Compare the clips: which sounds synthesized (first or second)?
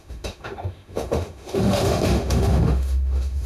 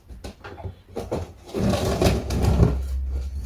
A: first